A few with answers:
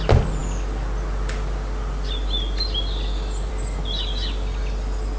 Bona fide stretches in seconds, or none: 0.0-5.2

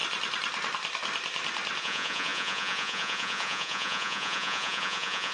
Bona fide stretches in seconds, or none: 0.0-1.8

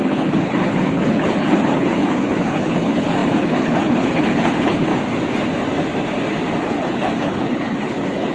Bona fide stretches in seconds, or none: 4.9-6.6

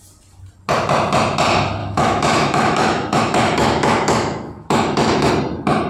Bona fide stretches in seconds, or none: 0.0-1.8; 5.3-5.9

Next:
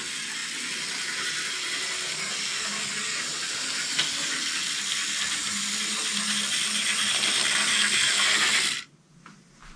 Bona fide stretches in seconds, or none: 0.0-9.8

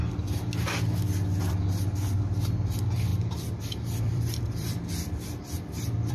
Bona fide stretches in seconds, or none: 0.0-3.1